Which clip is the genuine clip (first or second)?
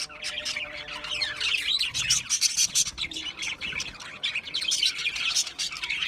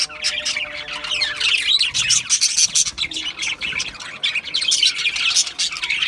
second